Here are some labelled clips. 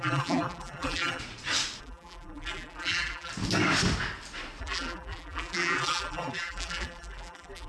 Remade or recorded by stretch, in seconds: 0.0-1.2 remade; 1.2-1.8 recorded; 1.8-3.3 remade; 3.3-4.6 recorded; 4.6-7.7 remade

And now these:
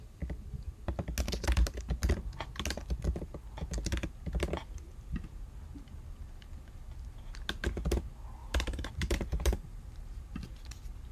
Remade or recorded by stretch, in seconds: 0.0-8.4 recorded; 8.4-10.2 remade; 10.2-11.1 recorded

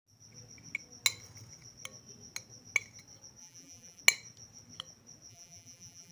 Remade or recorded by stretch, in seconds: 0.0-3.4 recorded; 3.4-4.0 remade; 4.0-5.3 recorded; 5.3-6.1 remade

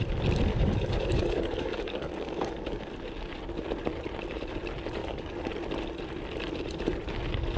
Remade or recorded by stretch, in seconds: 0.0-0.5 recorded; 0.5-2.9 remade; 2.9-5.0 recorded; 5.0-5.5 remade; 5.5-7.6 recorded

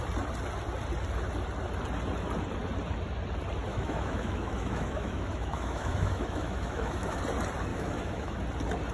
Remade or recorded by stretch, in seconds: 0.0-3.7 recorded; 3.7-7.2 remade; 7.2-7.7 recorded; 7.7-8.4 remade; 8.4-8.9 recorded